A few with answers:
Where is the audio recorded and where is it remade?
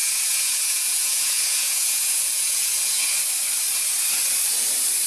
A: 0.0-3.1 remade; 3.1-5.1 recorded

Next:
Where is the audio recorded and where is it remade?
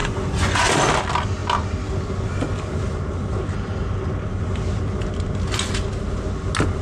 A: 0.0-0.7 remade; 0.7-6.8 recorded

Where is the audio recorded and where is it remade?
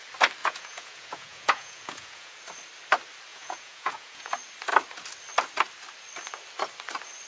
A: 0.0-0.4 recorded; 0.4-2.3 remade; 2.3-3.3 recorded; 3.3-4.3 remade; 4.3-7.3 recorded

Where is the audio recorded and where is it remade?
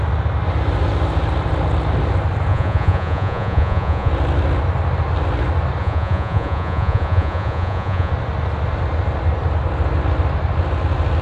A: 0.0-2.5 recorded; 2.5-4.1 remade; 4.1-5.8 recorded; 5.8-8.1 remade; 8.1-11.2 recorded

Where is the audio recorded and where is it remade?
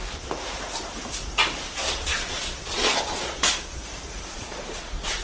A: 0.0-1.8 recorded; 1.8-3.8 remade; 3.8-4.3 recorded; 4.3-5.2 remade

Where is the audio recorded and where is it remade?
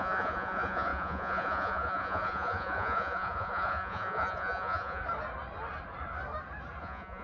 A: 0.0-5.0 remade; 5.0-6.8 recorded; 6.8-7.2 remade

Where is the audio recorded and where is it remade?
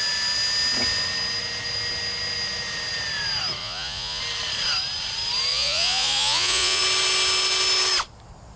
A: 0.0-3.6 recorded; 3.6-4.2 remade; 4.2-5.5 recorded; 5.5-6.8 remade; 6.8-8.6 recorded